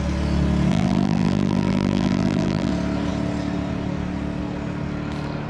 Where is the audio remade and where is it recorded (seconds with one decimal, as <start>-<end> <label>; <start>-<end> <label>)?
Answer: 0.0-0.7 recorded; 0.7-2.7 remade; 2.7-5.5 recorded